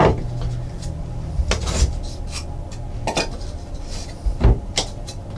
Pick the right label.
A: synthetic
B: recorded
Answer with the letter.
B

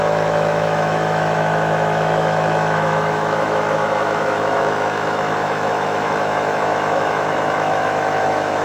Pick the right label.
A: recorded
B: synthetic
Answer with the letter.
B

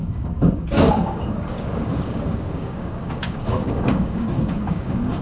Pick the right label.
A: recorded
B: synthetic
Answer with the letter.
B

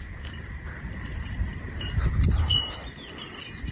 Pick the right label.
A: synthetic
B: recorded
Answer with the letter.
B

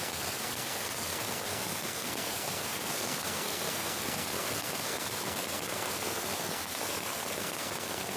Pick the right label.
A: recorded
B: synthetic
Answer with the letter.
B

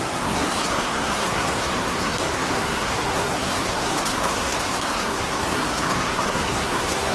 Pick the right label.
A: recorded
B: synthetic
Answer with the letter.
B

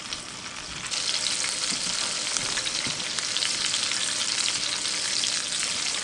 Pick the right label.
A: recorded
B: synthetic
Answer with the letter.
A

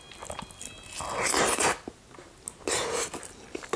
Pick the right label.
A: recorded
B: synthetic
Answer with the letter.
A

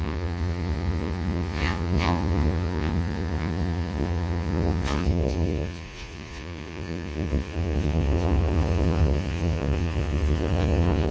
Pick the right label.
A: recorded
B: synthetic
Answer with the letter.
B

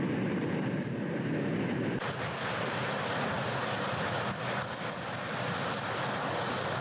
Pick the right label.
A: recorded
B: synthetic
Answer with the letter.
A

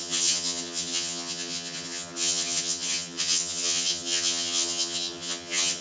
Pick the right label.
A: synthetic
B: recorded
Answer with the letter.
A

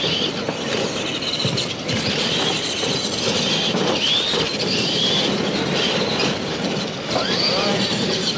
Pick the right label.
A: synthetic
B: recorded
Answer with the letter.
B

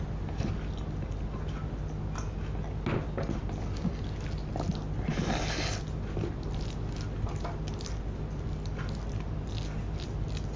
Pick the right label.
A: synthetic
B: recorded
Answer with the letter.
B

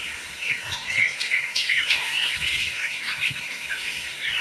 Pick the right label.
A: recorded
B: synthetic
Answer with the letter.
B